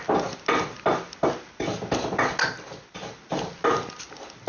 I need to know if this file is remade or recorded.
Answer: recorded